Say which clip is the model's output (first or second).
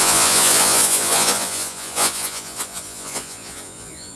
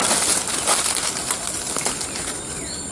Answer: first